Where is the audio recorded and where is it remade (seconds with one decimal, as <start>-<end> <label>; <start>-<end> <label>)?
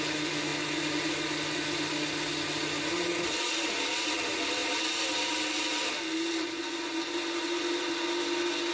0.0-8.7 recorded